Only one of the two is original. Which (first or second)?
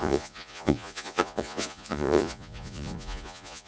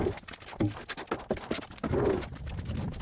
second